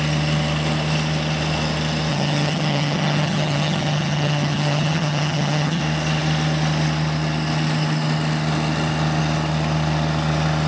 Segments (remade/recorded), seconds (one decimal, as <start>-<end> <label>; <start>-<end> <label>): 0.0-2.1 recorded; 2.1-5.8 remade; 5.8-10.7 recorded